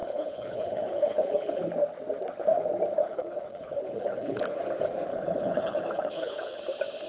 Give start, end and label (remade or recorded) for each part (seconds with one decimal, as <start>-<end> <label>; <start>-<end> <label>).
0.0-1.6 remade; 1.6-3.0 recorded; 3.0-4.4 remade; 4.4-5.1 recorded; 5.1-6.6 remade; 6.6-7.1 recorded